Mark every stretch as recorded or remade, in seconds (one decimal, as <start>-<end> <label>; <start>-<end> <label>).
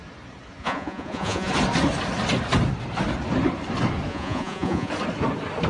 0.0-0.6 recorded; 0.6-1.5 remade; 1.5-4.1 recorded; 4.1-4.9 remade; 4.9-5.7 recorded